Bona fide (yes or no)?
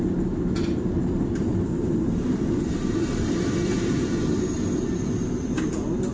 yes